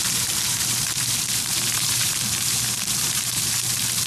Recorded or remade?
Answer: remade